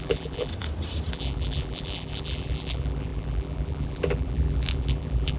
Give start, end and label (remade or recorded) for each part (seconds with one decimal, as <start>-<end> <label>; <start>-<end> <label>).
0.0-0.5 remade; 0.5-1.1 recorded; 1.1-5.4 remade